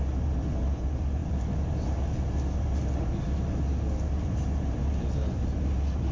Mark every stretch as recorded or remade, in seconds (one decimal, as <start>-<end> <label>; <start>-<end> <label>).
0.0-6.1 recorded